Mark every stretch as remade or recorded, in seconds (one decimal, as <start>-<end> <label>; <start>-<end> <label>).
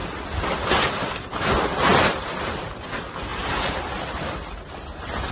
0.0-1.9 recorded; 1.9-2.8 remade; 2.8-5.3 recorded